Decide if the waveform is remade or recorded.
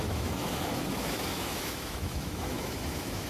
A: remade